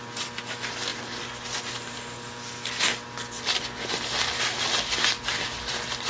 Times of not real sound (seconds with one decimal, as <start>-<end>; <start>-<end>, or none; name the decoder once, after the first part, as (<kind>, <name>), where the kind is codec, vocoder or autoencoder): none